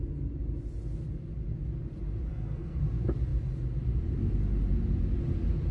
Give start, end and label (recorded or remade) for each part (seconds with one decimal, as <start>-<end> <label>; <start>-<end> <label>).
0.0-2.3 recorded; 2.3-2.8 remade; 2.8-5.7 recorded